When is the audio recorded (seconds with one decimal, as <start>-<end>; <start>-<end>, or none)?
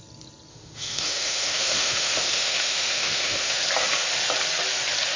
0.0-0.5; 3.6-5.2